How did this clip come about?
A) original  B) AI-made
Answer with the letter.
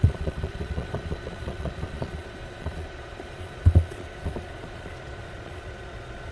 B